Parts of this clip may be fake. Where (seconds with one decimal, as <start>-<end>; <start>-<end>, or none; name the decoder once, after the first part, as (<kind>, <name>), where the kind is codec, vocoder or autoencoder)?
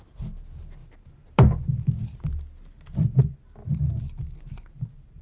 none